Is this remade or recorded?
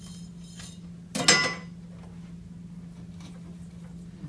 recorded